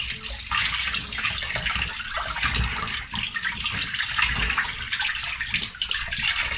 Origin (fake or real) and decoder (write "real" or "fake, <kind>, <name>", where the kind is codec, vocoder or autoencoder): real